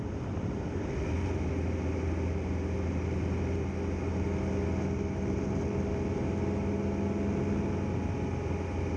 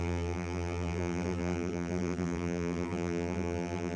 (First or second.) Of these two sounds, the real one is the first